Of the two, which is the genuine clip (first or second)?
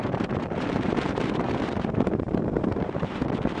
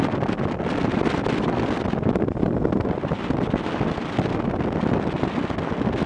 second